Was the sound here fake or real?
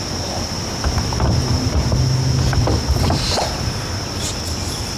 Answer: real